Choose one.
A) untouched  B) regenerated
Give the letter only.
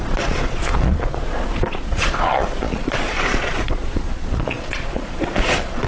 B